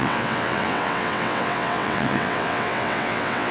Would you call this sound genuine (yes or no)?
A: no